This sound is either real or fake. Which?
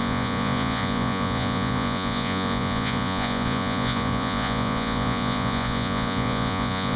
fake